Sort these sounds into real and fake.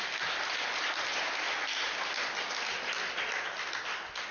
real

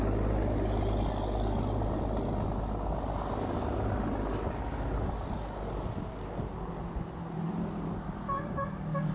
real